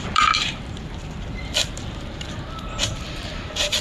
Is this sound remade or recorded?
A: remade